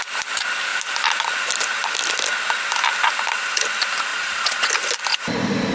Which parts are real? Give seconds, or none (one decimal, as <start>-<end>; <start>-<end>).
0.0-4.1; 4.7-5.7